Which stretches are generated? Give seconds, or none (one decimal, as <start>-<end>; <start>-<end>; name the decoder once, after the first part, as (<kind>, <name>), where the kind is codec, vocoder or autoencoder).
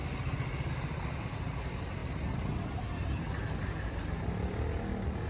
none